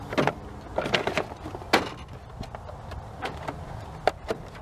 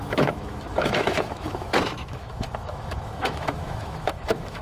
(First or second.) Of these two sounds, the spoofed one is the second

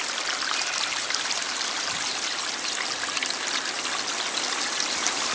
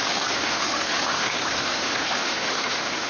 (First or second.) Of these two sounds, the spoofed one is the second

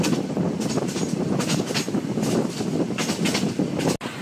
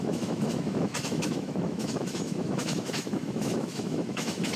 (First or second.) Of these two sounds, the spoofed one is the second